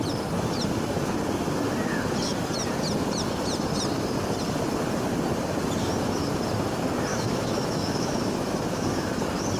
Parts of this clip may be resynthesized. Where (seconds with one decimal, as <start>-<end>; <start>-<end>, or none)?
7.1-9.2